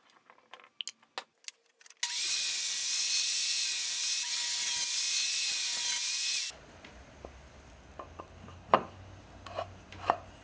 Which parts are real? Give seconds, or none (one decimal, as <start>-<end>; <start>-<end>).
0.0-10.4